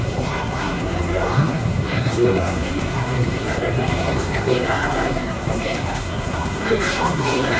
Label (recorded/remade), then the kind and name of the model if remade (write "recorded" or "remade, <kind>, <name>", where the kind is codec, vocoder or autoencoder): remade, codec, SNAC